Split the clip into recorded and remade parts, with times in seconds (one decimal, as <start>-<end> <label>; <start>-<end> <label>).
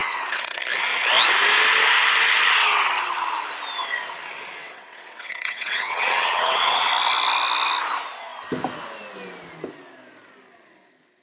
0.0-0.6 remade; 0.6-4.6 recorded; 4.6-6.9 remade; 6.9-11.2 recorded